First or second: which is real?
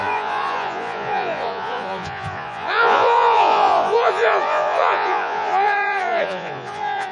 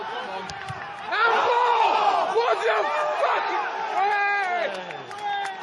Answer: second